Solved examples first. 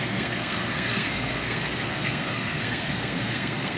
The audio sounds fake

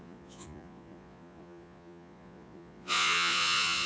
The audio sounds fake